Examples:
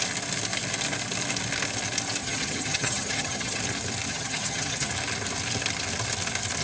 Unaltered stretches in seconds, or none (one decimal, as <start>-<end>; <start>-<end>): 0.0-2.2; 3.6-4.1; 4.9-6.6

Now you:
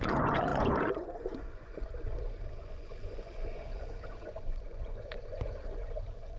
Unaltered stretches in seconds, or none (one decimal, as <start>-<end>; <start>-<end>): 1.7-2.2

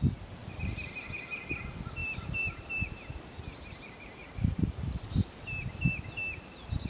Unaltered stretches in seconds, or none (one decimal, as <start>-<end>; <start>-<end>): 0.0-0.4; 1.0-2.0; 5.1-6.9

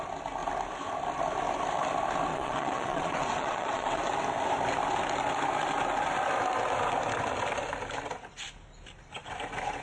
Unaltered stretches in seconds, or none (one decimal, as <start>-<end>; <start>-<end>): 0.0-2.3; 4.0-9.8

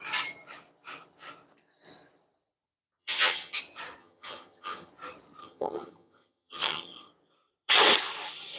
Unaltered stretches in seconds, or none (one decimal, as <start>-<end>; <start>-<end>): 0.0-3.0; 3.6-4.0; 4.9-5.4; 7.1-8.6

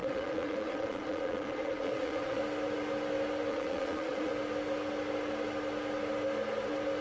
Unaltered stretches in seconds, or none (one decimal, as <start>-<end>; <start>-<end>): 2.4-3.5; 4.3-7.0